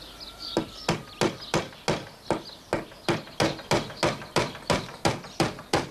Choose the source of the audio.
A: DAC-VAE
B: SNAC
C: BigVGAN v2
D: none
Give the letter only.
D